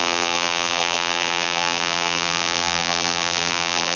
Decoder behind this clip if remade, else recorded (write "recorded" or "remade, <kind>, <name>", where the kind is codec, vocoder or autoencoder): remade, vocoder, BigVGAN v2